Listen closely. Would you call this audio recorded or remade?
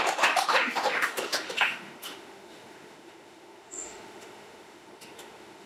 remade